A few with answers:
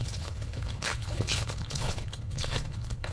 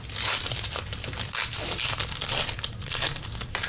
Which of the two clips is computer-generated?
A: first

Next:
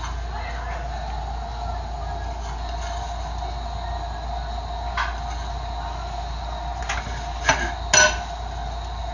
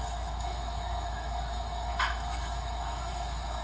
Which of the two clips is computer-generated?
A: second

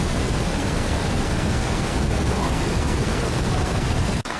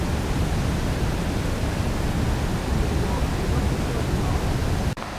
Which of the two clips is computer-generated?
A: first